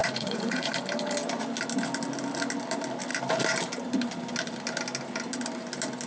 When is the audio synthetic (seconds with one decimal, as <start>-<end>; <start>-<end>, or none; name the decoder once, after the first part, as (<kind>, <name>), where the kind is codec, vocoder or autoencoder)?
0.0-0.7 (vocoder, Vocos)